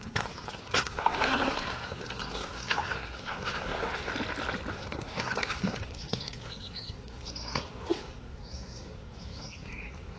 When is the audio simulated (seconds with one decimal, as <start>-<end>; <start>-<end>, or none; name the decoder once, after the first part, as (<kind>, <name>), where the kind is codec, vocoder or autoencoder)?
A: 0.0-4.1 (codec, SNAC); 4.7-10.2